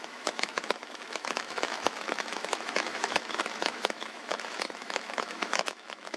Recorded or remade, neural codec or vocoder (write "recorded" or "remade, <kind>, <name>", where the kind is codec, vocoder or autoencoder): remade, autoencoder, DAC-VAE